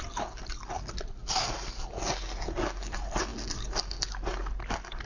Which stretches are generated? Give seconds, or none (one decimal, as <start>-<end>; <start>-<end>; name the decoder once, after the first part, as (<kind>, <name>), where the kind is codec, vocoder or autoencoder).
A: none